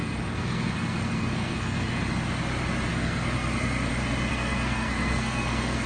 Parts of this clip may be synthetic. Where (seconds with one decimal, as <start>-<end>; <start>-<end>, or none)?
0.0-1.9; 2.9-3.9; 4.3-5.9